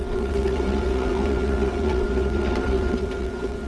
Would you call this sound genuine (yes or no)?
no